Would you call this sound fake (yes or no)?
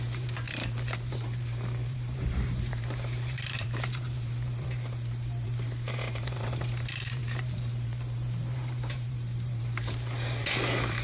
yes